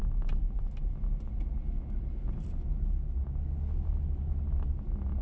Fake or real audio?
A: real